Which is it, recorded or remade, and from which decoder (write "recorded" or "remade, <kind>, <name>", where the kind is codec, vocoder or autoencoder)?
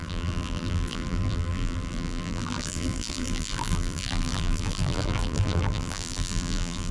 remade, vocoder, BigVGAN v2